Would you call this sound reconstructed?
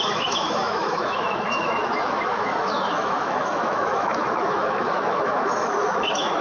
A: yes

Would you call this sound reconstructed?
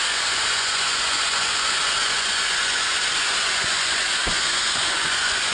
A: yes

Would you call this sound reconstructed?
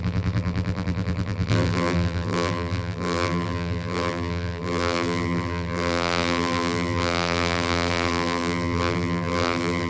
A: yes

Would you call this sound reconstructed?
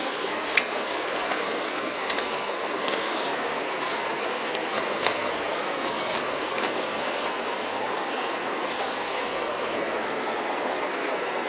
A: yes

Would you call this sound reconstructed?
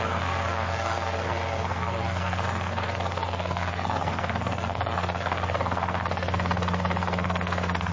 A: yes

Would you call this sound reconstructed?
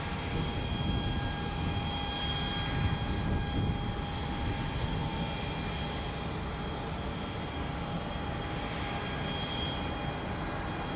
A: no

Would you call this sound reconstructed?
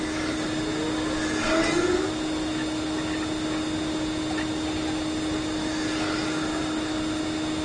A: no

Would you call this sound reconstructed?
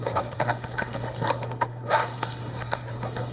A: yes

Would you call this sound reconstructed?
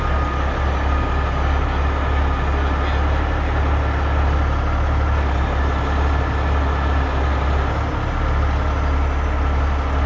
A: no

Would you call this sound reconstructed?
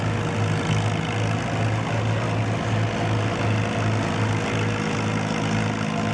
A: no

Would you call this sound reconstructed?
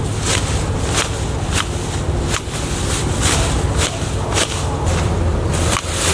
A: no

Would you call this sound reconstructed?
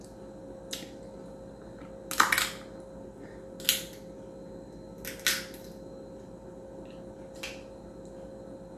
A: no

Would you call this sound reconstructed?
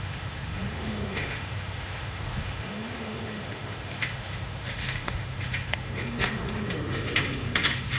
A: yes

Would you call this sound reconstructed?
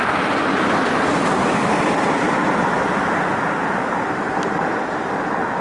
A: yes